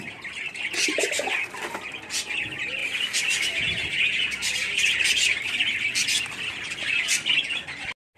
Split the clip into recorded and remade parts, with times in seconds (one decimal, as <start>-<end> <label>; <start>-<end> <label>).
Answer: 0.0-8.2 recorded